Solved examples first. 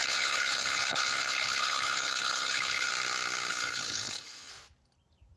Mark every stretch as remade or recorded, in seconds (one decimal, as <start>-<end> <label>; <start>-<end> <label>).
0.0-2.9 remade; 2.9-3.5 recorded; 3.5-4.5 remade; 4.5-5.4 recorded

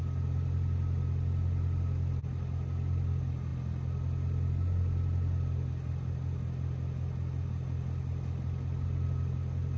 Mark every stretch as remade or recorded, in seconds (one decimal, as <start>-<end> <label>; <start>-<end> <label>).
0.0-9.8 recorded

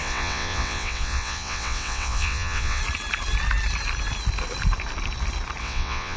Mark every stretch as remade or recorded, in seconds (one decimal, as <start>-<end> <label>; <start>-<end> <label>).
0.0-2.8 remade; 2.8-5.6 recorded; 5.6-6.2 remade

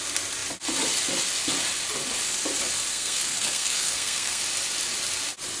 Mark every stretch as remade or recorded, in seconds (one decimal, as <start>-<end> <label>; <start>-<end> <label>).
0.0-2.9 recorded; 2.9-4.4 remade; 4.4-5.6 recorded

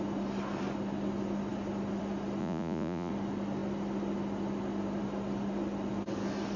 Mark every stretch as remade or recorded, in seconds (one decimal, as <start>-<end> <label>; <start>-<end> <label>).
0.0-2.4 recorded; 2.4-3.1 remade; 3.1-6.6 recorded